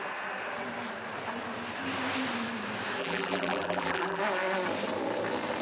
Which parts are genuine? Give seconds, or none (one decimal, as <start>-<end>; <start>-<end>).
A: 0.0-3.0; 4.2-5.6